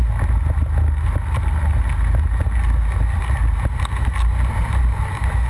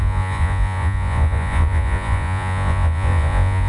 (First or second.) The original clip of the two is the first